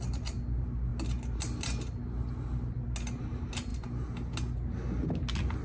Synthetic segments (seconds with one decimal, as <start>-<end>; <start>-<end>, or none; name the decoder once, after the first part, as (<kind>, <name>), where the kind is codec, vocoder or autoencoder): none